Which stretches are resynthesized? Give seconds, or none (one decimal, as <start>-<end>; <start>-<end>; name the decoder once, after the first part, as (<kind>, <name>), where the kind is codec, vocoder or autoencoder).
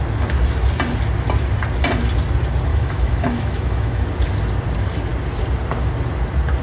2.7-4.0 (autoencoder, DAC-VAE)